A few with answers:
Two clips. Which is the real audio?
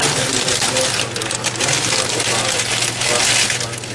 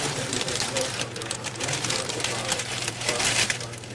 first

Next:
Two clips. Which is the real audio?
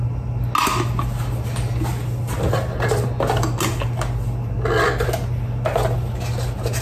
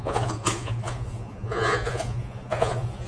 first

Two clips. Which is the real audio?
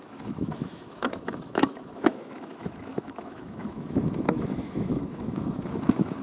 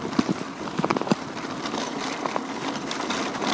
second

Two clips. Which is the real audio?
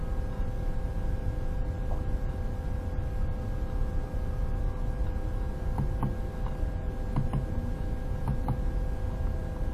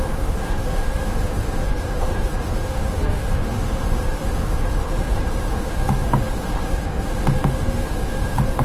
first